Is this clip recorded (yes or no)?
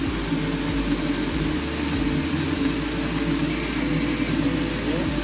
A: yes